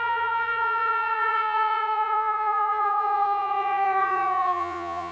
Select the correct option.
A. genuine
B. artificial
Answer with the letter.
B